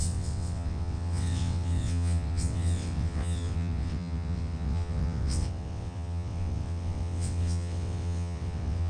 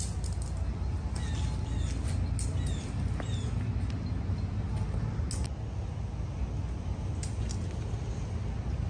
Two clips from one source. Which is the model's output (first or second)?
first